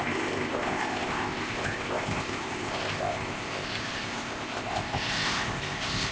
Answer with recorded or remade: remade